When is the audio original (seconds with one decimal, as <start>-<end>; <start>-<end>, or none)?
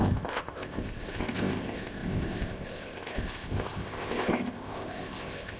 none